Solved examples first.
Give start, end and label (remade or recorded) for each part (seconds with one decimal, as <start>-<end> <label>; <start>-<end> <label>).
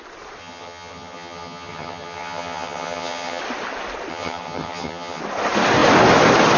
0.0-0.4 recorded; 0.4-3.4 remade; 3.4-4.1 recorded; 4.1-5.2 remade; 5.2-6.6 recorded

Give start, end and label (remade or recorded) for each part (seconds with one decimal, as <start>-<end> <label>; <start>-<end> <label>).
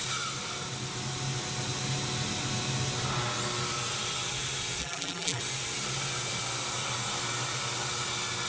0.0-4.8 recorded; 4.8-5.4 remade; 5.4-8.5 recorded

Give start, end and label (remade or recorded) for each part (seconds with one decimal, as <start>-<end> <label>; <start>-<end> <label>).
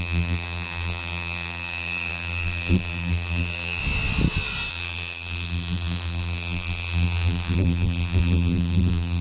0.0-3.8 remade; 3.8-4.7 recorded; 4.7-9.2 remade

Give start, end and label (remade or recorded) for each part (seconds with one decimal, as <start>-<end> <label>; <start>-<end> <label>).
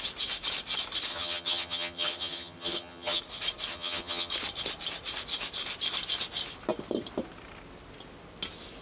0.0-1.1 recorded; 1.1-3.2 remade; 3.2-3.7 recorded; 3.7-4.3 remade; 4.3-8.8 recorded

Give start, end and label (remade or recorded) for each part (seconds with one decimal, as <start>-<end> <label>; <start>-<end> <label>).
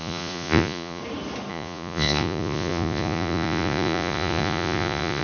0.0-1.0 remade; 1.0-1.5 recorded; 1.5-5.2 remade